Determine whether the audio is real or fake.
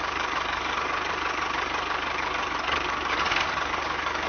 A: fake